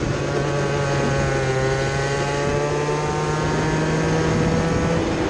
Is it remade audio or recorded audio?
recorded